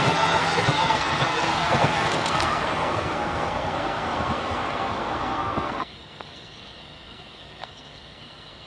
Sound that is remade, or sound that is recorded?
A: remade